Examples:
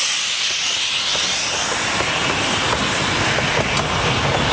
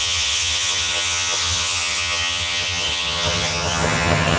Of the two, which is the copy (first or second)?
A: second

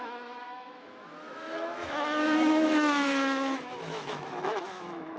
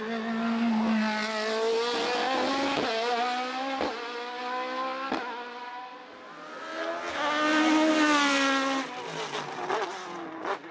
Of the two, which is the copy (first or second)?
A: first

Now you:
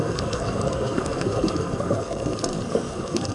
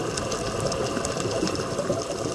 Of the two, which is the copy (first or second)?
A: first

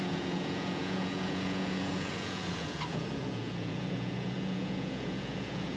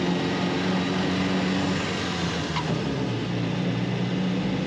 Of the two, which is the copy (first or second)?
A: first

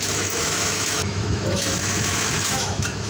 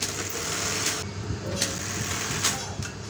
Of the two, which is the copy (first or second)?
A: first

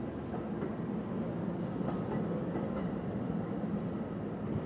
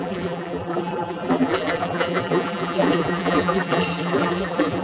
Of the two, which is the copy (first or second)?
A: second